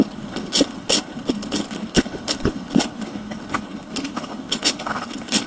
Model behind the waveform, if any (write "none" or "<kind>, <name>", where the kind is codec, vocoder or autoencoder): codec, HILCodec